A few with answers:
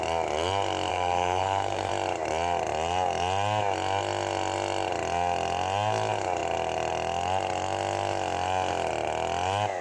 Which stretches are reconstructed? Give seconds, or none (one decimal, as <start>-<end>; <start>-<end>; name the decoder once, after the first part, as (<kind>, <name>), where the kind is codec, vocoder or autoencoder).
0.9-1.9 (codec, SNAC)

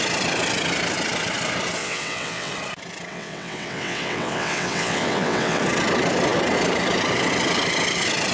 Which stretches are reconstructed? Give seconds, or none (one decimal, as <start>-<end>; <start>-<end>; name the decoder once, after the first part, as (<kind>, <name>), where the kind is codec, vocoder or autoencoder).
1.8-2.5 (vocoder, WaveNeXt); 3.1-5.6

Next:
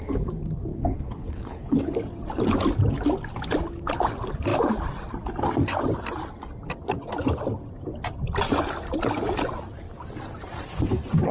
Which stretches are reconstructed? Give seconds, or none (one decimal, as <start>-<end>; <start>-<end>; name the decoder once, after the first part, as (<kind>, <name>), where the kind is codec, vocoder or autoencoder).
0.7-1.8 (codec, HILCodec)